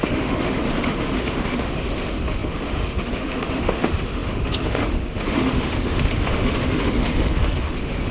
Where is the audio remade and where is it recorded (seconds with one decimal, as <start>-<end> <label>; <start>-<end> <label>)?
0.0-8.1 remade